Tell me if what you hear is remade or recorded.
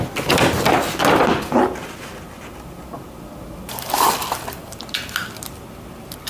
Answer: recorded